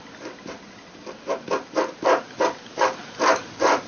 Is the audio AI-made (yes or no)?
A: no